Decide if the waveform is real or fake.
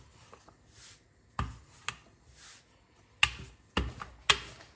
real